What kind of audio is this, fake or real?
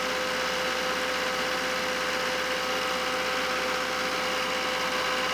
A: real